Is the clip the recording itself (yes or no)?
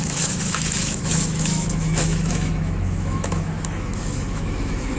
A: no